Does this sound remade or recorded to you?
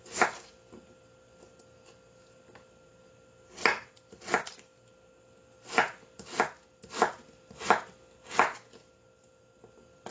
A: recorded